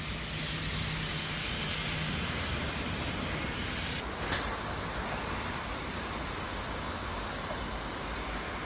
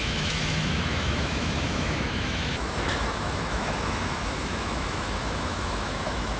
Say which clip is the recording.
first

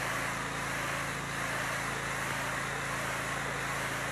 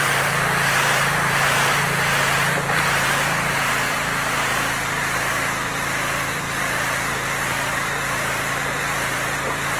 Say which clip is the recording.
first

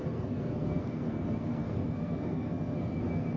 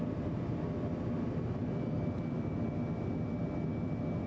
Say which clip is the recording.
second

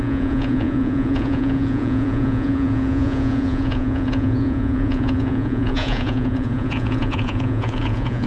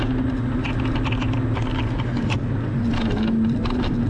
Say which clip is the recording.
second